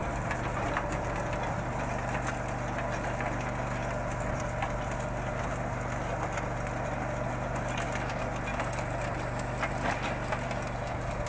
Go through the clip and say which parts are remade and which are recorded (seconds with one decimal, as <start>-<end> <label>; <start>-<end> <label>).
0.0-11.3 recorded